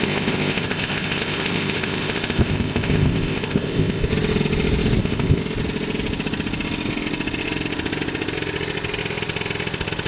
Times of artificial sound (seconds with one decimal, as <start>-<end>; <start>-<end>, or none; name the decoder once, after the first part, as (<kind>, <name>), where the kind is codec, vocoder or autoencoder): 0.0-4.1 (codec, ZipCodec); 5.0-5.4